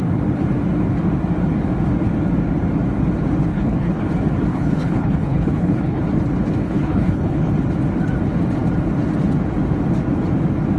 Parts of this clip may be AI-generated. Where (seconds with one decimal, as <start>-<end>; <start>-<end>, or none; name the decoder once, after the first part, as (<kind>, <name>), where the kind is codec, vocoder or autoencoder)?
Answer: 3.5-4.0 (codec, HILCodec); 4.5-6.0; 6.6-7.5